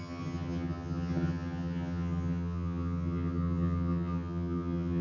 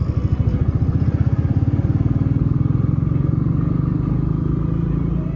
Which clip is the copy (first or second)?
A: first